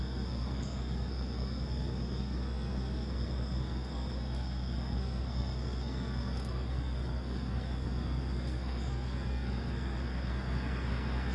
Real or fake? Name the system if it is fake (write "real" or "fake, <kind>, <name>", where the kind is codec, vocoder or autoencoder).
fake, codec, SNAC